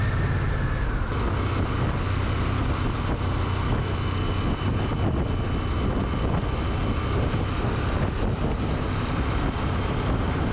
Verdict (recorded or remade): recorded